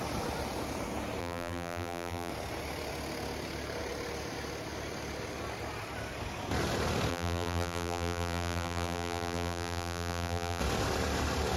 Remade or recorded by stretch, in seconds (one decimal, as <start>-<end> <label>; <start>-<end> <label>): 0.0-1.2 recorded; 1.2-2.3 remade; 2.3-7.1 recorded; 7.1-10.6 remade; 10.6-11.6 recorded